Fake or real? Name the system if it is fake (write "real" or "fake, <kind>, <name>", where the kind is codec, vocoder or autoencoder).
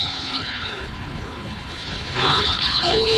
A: fake, codec, HILCodec